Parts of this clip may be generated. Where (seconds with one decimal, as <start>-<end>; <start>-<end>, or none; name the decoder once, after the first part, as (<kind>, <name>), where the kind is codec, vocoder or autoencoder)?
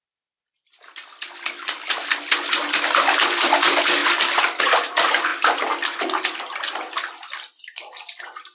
none